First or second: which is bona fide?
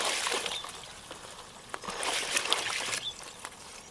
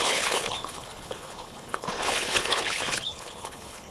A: first